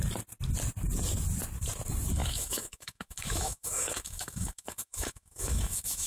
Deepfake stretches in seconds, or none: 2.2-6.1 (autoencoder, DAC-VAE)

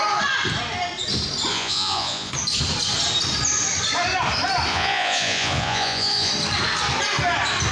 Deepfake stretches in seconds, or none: 1.5-2.3 (vocoder, Vocos); 4.7-6.3

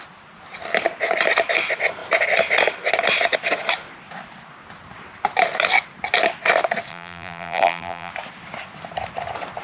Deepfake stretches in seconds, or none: 6.9-8.1 (vocoder, BigVGAN v2)

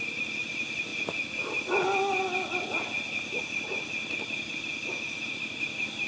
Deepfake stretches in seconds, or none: none